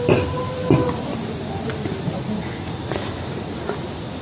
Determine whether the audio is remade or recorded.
recorded